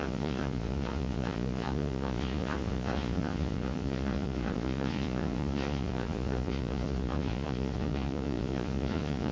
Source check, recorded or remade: remade